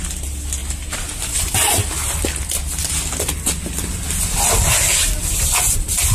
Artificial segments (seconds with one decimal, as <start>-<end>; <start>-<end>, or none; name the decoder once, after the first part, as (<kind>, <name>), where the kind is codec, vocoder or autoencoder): none